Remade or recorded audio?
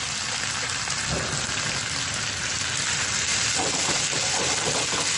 recorded